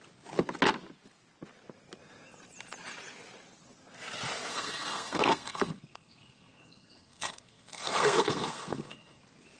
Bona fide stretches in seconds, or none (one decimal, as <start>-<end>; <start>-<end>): 0.0-4.5; 9.2-9.6